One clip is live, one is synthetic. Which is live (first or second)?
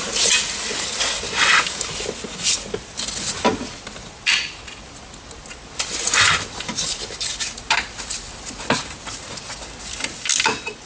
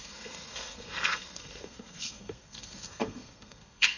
first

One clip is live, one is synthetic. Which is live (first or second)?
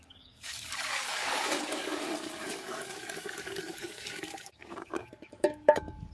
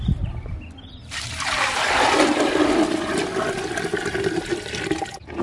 second